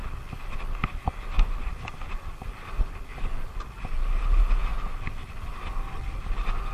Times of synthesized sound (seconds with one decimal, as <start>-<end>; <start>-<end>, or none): none